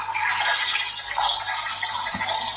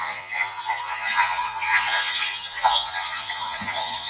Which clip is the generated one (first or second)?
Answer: second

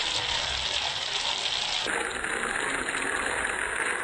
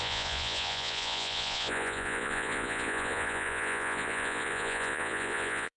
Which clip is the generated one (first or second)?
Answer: second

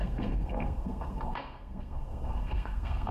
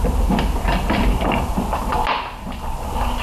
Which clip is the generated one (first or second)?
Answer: first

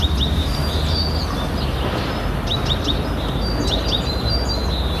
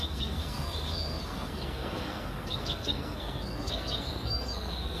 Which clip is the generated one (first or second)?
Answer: second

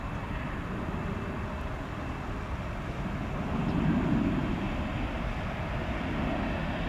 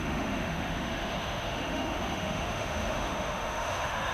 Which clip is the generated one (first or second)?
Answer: second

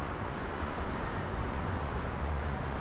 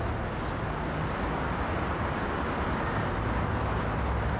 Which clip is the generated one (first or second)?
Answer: first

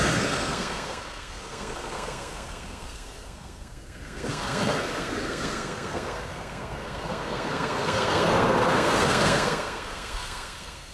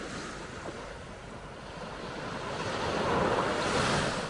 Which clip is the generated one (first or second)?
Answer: first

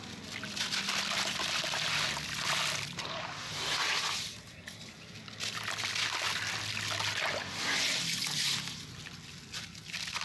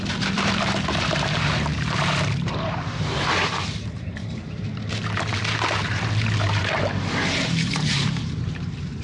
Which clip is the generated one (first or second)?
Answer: second